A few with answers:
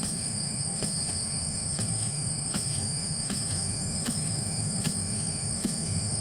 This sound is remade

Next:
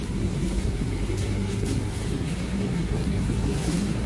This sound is remade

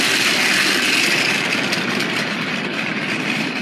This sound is recorded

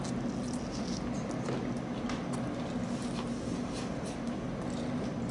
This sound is recorded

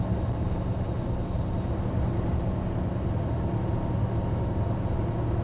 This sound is recorded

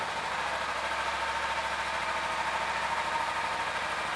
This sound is recorded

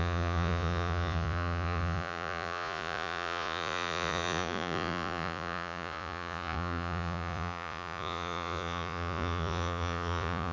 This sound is remade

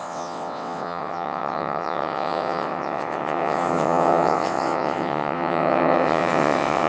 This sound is remade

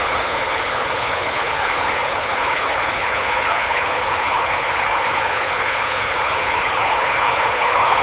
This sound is remade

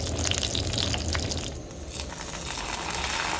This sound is recorded